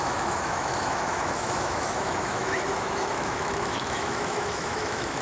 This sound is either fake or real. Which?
fake